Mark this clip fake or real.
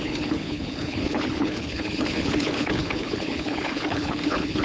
fake